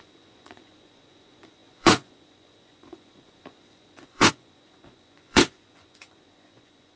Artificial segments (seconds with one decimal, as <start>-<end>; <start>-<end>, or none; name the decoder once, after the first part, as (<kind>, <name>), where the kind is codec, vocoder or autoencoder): 0.0-7.0 (vocoder, Vocos)